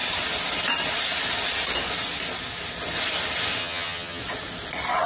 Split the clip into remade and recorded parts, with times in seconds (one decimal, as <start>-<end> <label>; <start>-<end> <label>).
0.0-3.6 recorded; 3.6-4.2 remade; 4.2-5.1 recorded